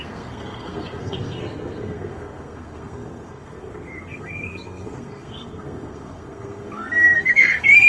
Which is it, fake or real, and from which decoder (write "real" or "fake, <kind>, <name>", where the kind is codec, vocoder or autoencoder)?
fake, codec, SNAC